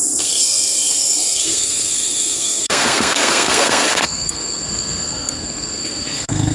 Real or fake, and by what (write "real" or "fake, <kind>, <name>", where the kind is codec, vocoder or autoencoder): fake, codec, SNAC